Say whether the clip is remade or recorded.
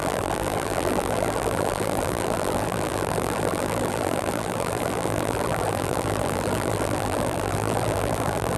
remade